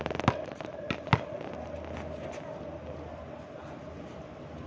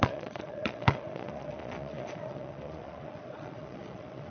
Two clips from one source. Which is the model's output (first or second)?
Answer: second